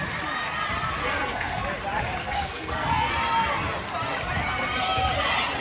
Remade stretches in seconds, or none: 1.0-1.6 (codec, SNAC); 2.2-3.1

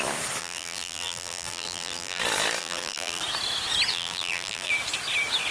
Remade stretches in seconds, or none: 0.4-2.2 (vocoder, BigVGAN v2); 2.6-3.2; 3.9-4.7

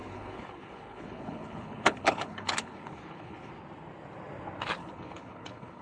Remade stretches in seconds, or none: 0.0-3.5 (codec, HILCodec); 4.8-5.8

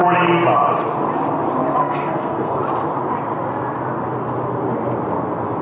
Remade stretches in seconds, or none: 1.8-2.6 (codec, SNAC)

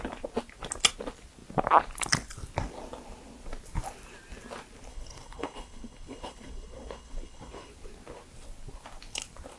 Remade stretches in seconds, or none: 4.9-7.7 (codec, HILCodec)